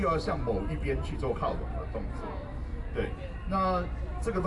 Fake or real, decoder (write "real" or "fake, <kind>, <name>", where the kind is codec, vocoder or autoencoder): real